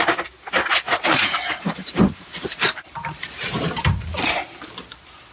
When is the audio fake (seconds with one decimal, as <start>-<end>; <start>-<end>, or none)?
0.7-3.9